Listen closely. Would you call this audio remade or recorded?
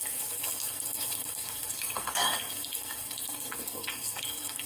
remade